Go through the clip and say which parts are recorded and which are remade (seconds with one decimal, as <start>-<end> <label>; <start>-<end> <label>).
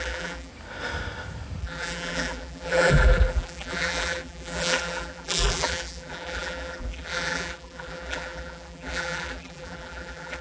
0.0-0.5 remade; 0.5-1.6 recorded; 1.6-10.4 remade